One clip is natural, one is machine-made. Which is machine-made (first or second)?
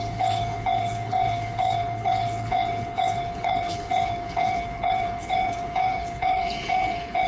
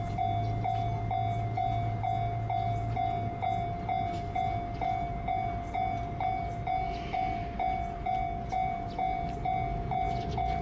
first